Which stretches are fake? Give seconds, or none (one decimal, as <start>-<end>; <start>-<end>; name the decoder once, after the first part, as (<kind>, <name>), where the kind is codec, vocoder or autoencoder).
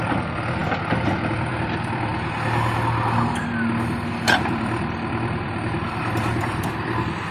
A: 0.0-0.6 (vocoder, BigVGAN v2); 1.3-2.1; 4.1-7.3